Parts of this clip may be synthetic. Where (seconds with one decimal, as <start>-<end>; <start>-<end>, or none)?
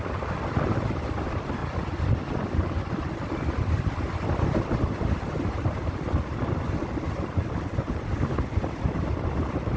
none